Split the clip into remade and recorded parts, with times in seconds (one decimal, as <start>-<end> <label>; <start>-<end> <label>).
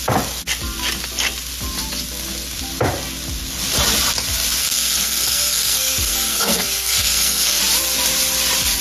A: 0.0-4.6 recorded; 4.6-7.6 remade; 7.6-8.8 recorded